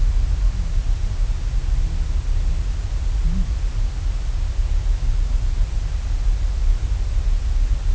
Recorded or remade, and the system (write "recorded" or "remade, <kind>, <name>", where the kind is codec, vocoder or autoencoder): recorded